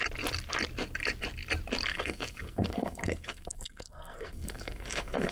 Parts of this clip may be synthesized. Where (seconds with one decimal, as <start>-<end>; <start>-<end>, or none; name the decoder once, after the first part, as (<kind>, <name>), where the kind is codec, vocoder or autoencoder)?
1.9-5.3 (codec, SNAC)